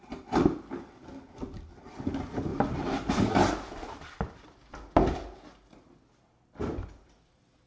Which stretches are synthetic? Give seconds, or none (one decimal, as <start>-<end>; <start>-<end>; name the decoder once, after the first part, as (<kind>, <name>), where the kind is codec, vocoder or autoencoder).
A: none